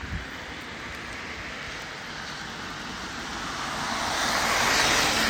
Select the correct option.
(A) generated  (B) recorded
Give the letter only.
B